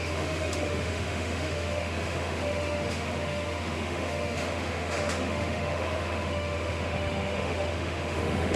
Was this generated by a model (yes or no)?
yes